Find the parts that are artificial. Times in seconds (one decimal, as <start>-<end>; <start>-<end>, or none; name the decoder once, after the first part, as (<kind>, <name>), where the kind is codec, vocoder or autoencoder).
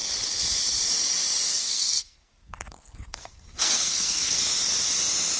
1.5-4.4 (codec, SNAC)